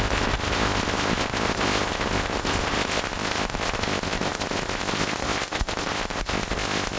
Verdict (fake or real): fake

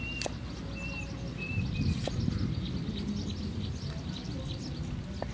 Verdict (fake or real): real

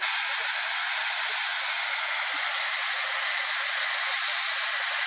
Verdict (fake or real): real